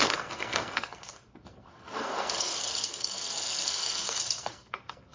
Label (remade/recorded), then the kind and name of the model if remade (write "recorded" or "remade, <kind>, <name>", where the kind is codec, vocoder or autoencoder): remade, codec, SNAC